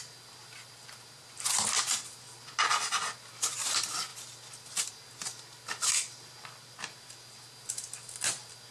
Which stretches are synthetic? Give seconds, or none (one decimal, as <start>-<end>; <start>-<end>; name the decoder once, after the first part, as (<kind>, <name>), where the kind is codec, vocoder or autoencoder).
none